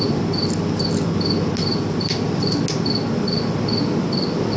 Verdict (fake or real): real